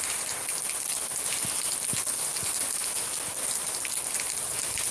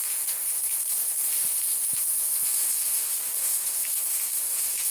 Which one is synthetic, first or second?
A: second